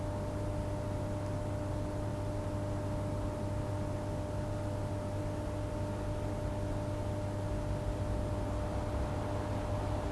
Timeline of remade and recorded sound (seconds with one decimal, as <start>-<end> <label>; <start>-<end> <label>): 0.0-10.1 recorded